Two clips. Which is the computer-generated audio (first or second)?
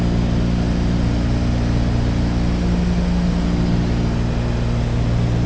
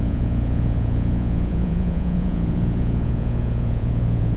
second